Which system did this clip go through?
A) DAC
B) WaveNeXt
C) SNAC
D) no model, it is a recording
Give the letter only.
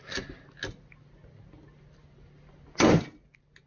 D